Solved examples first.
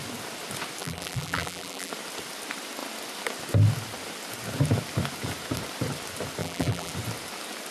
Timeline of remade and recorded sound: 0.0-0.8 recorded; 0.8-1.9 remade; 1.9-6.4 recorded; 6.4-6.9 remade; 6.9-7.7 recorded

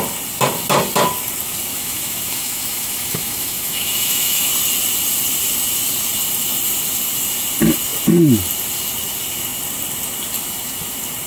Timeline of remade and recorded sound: 0.0-1.7 recorded; 1.7-4.5 remade; 4.5-11.3 recorded

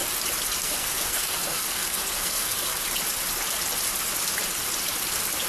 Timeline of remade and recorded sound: 0.0-0.6 recorded; 0.6-2.7 remade; 2.7-5.5 recorded

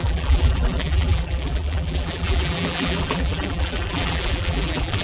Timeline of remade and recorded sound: 0.0-5.0 remade

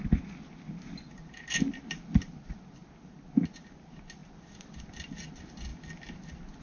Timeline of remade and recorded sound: 0.0-6.6 recorded

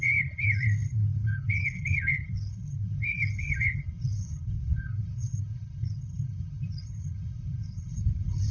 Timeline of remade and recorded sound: 0.0-8.5 remade